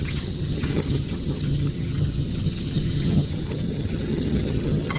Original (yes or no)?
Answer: no